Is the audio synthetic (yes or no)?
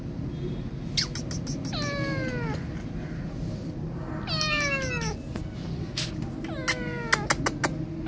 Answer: no